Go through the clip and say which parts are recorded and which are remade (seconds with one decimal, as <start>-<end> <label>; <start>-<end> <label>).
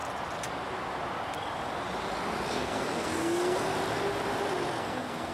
0.0-2.5 recorded; 2.5-3.7 remade; 3.7-4.8 recorded; 4.8-5.3 remade